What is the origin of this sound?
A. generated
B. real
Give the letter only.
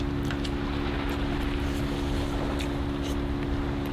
B